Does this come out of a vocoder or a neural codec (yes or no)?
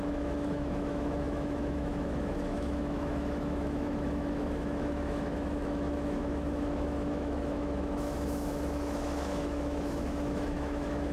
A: yes